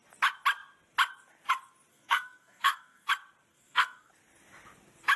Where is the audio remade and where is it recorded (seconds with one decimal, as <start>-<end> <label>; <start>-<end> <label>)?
0.0-1.9 recorded; 1.9-3.1 remade; 3.1-3.5 recorded; 3.5-4.1 remade; 4.1-5.2 recorded